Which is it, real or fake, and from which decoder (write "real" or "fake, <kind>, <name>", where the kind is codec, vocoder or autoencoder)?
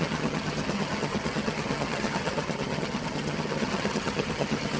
fake, vocoder, HiFi-GAN